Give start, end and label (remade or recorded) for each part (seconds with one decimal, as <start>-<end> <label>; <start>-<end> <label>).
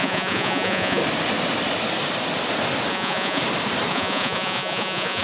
0.0-1.0 remade; 1.0-2.9 recorded; 2.9-3.4 remade; 3.4-3.9 recorded; 3.9-5.2 remade